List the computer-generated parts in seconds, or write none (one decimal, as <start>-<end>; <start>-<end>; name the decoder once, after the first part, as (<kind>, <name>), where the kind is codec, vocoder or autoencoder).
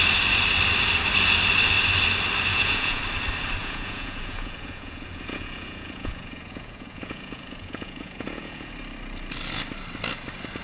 2.5-3.0 (vocoder, Vocos); 3.6-8.7